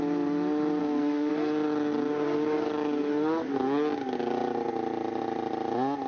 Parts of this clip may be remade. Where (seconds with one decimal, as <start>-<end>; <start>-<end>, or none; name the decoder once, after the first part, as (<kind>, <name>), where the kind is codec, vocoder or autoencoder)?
0.8-1.3 (codec, SNAC)